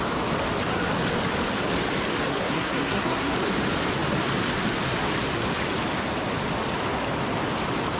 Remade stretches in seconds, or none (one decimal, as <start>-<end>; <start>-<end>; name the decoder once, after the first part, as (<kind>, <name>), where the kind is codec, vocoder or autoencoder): 2.3-3.3 (codec, SNAC)